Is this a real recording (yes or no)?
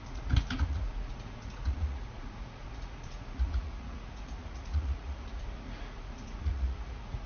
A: no